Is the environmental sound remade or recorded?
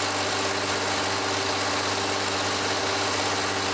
recorded